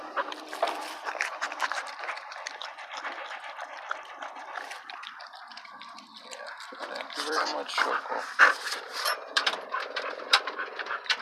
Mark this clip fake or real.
fake